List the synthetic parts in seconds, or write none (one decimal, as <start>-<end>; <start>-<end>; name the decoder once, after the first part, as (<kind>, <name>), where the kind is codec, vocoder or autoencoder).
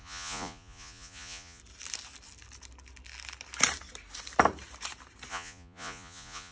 0.0-1.6 (vocoder, Vocos); 5.3-6.5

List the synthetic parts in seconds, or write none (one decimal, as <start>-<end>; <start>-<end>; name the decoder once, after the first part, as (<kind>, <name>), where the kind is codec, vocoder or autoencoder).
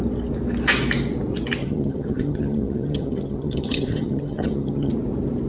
1.6-4.9 (vocoder, HiFi-GAN)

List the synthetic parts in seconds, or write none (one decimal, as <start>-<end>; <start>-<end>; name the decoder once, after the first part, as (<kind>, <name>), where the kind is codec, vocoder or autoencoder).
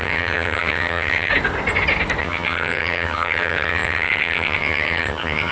0.0-1.3 (vocoder, HiFi-GAN); 2.2-5.5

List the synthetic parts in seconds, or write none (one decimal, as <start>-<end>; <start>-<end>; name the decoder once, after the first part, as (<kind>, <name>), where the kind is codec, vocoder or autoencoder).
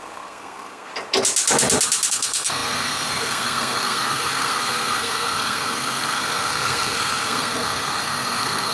0.0-0.9 (codec, SNAC); 2.1-8.7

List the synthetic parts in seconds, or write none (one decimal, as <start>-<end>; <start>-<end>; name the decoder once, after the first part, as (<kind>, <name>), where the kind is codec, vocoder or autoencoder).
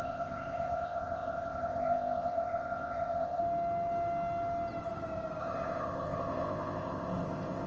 0.0-3.4 (codec, ZipCodec); 5.4-7.7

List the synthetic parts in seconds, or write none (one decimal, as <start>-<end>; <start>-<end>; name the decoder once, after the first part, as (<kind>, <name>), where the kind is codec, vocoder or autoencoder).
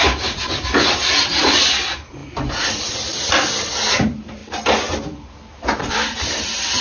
none